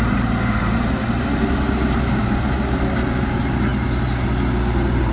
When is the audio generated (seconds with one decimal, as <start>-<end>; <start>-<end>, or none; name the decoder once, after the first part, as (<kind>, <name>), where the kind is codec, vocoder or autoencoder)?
0.0-3.7 (vocoder, BigVGAN v2)